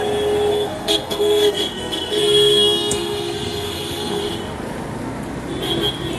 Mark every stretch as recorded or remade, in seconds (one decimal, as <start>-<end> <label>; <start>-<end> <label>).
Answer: 0.0-0.5 recorded; 0.5-4.2 remade; 4.2-6.2 recorded